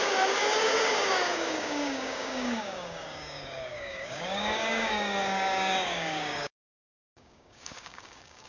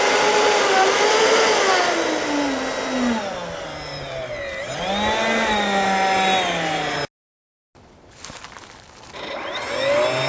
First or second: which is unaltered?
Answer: second